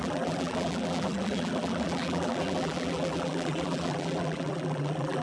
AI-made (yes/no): yes